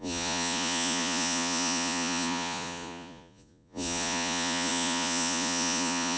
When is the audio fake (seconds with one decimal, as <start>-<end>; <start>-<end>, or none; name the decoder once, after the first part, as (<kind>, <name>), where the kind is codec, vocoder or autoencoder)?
0.0-6.2 (vocoder, Vocos)